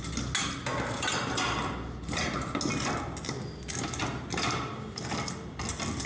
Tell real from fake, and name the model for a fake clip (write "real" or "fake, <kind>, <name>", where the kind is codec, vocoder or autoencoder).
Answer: real